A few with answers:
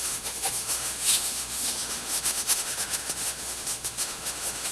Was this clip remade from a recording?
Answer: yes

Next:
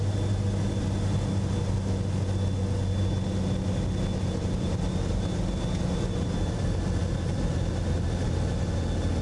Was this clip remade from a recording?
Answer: no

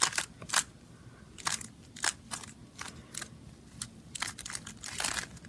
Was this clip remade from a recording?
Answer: no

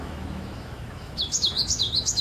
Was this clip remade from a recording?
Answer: yes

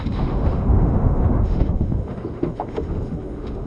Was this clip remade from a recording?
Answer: yes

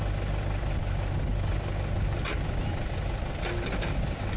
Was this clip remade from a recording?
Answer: no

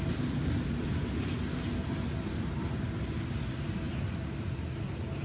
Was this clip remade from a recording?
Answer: no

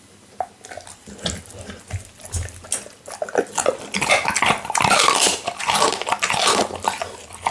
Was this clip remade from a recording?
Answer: no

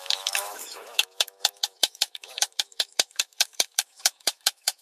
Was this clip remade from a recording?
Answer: yes